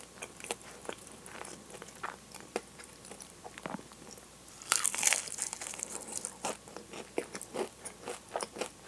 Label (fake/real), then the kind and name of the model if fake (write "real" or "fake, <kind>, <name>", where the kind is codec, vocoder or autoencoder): fake, vocoder, BigVGAN v2